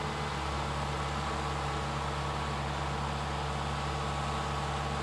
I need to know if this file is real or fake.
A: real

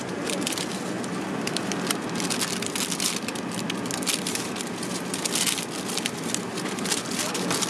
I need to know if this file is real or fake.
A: real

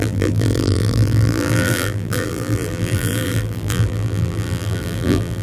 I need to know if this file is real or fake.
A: fake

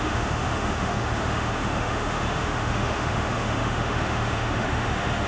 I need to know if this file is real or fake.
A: fake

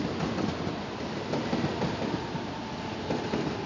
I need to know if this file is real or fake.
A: real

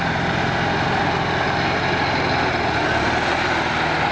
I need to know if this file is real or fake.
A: real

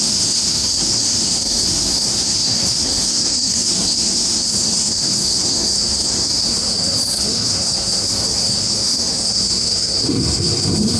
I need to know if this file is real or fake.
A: fake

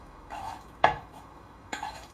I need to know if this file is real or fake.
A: fake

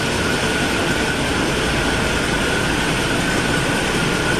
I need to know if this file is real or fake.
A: real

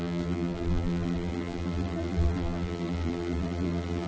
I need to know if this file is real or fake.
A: fake